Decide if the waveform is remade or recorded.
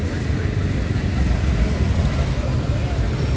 recorded